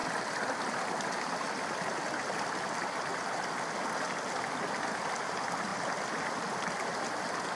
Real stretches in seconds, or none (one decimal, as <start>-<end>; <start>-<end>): 0.0-7.6

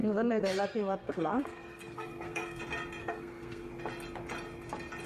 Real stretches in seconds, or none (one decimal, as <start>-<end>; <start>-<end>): 2.6-3.0; 3.7-5.1

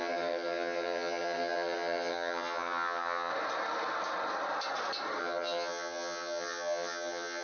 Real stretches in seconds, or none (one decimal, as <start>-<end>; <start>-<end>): 3.3-5.2

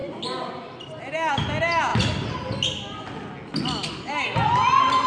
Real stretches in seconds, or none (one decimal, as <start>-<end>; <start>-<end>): 0.0-5.1

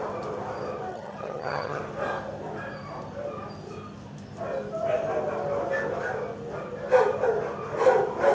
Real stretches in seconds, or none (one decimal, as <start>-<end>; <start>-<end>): 0.0-0.9; 1.8-8.3

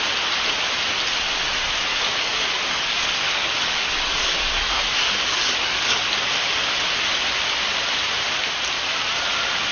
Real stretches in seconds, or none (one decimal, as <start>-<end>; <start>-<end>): 0.0-1.9; 6.0-9.7

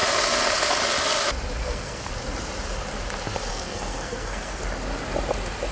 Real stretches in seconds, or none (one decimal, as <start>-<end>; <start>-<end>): 0.0-1.6; 2.1-3.5; 4.6-5.7

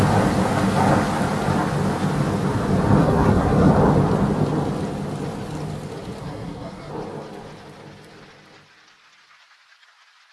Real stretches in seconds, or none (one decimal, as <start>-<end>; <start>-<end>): 0.0-3.0; 3.7-6.2; 6.9-10.3